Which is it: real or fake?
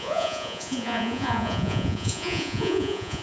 fake